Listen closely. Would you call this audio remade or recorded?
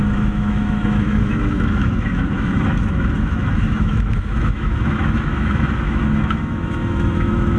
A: remade